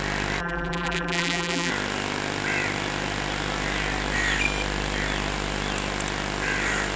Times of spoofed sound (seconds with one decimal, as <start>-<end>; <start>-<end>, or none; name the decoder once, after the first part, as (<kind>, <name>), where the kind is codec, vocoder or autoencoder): 0.4-1.7 (vocoder, BigVGAN v2)